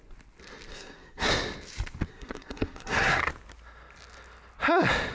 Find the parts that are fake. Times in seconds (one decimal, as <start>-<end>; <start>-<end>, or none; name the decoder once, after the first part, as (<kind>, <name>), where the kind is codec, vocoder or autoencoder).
0.7-1.3 (codec, SNAC); 2.1-3.2

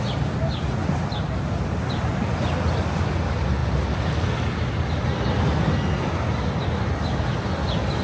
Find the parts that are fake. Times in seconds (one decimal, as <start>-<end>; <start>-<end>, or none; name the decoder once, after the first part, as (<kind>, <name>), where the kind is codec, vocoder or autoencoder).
none